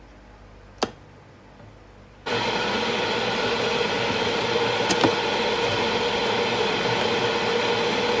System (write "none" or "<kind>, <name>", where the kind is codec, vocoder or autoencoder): none